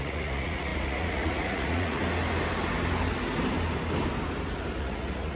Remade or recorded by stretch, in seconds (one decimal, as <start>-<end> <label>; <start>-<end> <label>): 0.0-2.0 remade; 2.0-4.8 recorded; 4.8-5.4 remade